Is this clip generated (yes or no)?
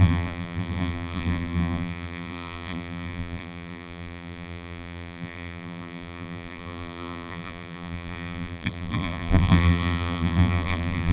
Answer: yes